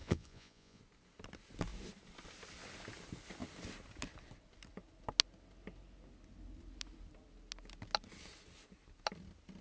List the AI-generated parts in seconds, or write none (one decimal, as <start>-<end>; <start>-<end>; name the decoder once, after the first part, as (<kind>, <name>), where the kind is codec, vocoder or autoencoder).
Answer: 0.0-0.8 (vocoder, Vocos)